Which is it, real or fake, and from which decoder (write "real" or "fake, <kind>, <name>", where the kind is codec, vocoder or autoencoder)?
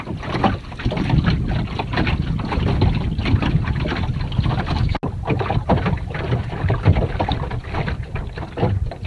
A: real